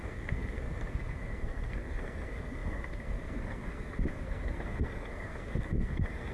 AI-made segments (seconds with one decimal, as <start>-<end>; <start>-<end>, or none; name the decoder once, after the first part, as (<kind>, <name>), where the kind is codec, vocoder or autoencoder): 0.0-6.3 (codec, SNAC)